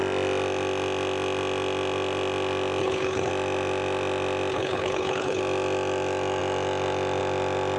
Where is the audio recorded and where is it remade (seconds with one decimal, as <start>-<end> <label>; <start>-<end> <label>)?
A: 0.0-2.8 recorded; 2.8-3.3 remade; 3.3-4.5 recorded; 4.5-5.4 remade; 5.4-7.8 recorded